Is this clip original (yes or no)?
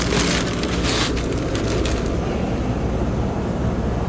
yes